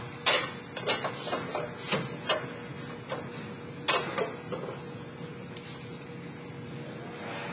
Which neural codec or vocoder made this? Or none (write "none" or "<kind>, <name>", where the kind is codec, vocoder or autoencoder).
none